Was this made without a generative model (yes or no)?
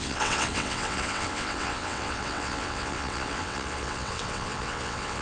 no